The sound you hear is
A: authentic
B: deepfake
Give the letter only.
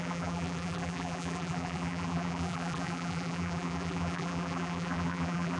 B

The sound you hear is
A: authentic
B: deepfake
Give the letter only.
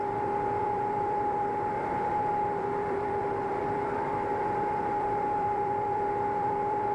B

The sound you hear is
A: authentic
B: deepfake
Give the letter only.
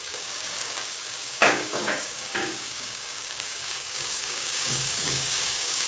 B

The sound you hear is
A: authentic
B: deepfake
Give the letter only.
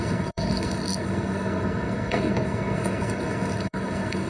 B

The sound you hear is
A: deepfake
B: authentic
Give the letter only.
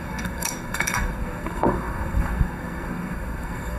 A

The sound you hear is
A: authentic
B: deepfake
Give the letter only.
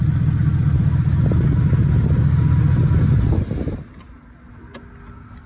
A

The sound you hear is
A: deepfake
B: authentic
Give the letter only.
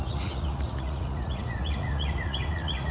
A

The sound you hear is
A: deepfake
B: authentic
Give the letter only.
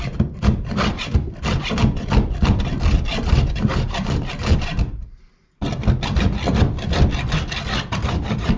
B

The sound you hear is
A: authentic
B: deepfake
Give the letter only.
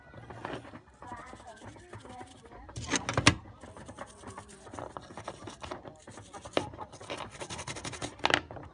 A